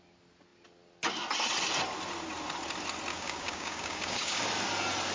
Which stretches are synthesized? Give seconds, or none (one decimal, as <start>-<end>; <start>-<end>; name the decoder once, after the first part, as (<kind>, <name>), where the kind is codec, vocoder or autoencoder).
3.1-4.4 (codec, DAC)